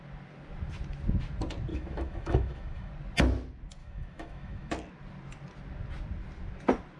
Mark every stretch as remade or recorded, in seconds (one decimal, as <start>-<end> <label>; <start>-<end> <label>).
0.0-1.7 recorded; 1.7-2.9 remade; 2.9-3.8 recorded; 3.8-4.7 remade; 4.7-7.0 recorded